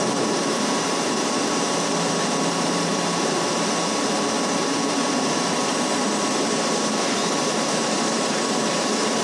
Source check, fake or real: fake